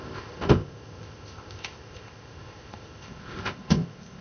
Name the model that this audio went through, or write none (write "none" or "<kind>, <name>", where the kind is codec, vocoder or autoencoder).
codec, ZipCodec